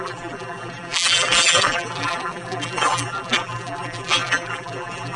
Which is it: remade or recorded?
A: remade